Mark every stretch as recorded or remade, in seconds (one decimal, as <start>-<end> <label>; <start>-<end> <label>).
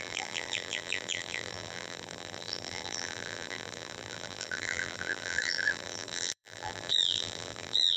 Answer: 0.0-8.0 remade